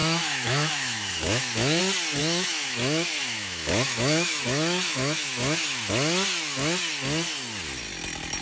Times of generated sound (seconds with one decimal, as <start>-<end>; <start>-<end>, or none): 0.0-1.8; 2.2-5.9